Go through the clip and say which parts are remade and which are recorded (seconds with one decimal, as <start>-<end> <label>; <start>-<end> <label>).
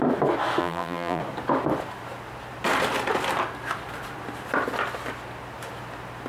0.0-0.6 recorded; 0.6-1.2 remade; 1.2-6.3 recorded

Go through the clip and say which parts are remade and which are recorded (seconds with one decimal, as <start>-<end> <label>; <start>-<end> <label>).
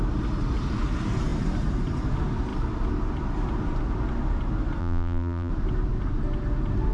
0.0-4.8 recorded; 4.8-5.5 remade; 5.5-6.9 recorded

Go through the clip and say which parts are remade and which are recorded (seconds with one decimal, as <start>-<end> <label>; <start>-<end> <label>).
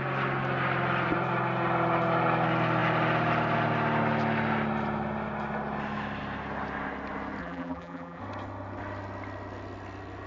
0.0-7.4 recorded; 7.4-8.2 remade; 8.2-10.3 recorded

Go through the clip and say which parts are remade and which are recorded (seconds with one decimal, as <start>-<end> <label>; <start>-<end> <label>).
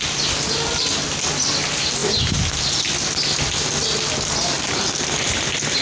0.0-5.8 recorded